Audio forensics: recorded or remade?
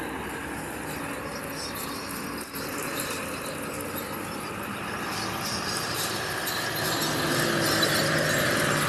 recorded